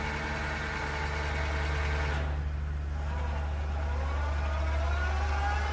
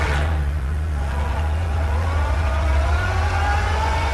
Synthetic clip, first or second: second